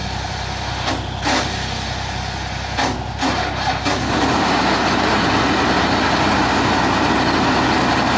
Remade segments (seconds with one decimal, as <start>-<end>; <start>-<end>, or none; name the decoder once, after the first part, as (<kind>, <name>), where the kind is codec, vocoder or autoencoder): none